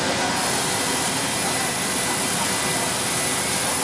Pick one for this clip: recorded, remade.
recorded